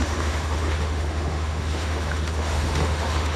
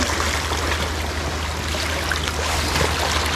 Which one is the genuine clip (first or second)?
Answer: second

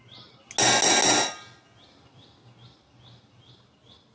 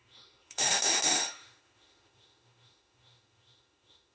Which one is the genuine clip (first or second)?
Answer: first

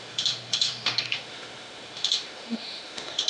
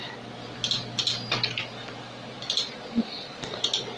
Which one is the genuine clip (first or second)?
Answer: second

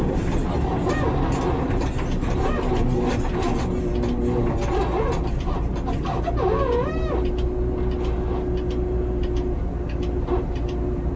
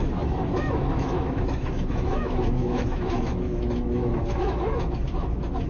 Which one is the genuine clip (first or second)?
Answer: first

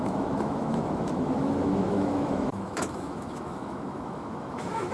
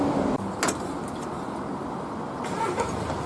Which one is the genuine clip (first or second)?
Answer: second